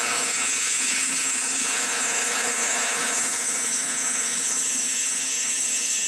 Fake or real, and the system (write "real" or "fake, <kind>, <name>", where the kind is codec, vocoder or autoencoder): fake, codec, HILCodec